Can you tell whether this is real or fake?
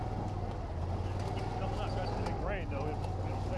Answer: real